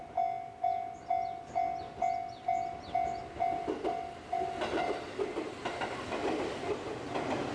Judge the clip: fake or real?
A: real